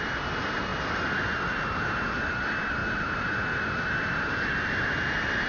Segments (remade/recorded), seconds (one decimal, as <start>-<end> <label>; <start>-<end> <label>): 0.0-5.5 recorded